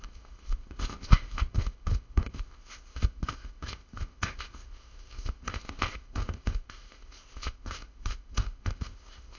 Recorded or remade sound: remade